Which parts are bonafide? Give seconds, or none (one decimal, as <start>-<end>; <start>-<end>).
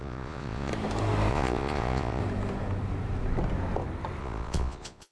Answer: 0.7-1.3; 2.2-4.2